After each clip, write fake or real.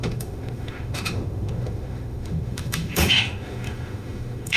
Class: fake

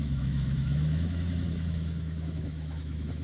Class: fake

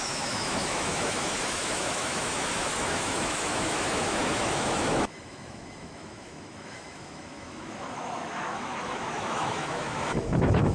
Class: fake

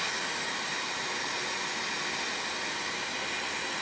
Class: real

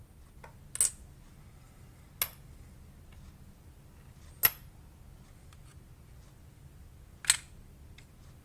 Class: real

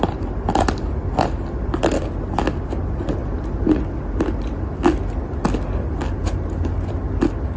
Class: real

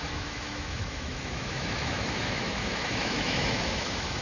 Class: fake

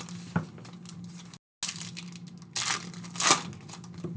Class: real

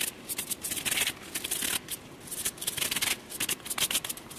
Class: real